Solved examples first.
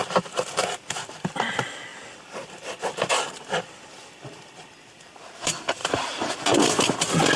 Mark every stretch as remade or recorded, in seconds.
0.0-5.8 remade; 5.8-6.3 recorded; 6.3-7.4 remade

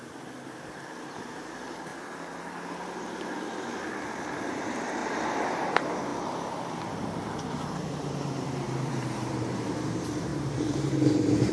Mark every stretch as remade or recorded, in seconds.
0.0-1.9 remade; 1.9-4.5 recorded; 4.5-5.0 remade; 5.0-5.6 recorded; 5.6-6.1 remade; 6.1-7.0 recorded; 7.0-11.5 remade

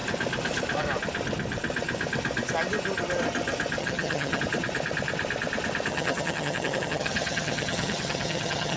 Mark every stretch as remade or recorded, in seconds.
0.0-3.8 recorded; 3.8-4.4 remade; 4.4-5.9 recorded; 5.9-8.8 remade

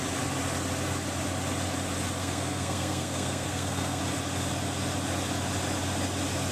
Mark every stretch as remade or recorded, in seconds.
0.0-2.2 recorded; 2.2-4.0 remade; 4.0-6.5 recorded

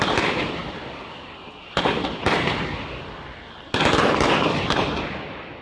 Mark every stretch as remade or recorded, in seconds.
0.0-5.6 recorded

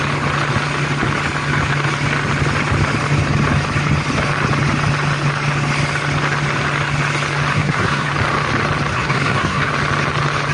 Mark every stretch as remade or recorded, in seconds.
0.0-7.5 recorded; 7.5-8.1 remade; 8.1-8.9 recorded; 8.9-9.7 remade; 9.7-10.5 recorded

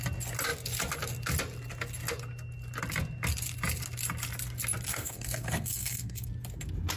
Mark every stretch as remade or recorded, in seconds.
0.0-4.9 recorded; 4.9-6.3 remade; 6.3-7.0 recorded

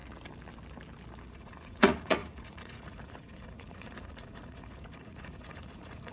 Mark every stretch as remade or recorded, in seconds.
0.0-1.3 recorded; 1.3-6.1 remade